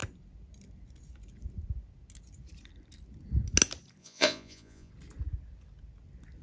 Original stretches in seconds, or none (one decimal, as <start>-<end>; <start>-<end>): 0.0-4.0; 4.9-6.4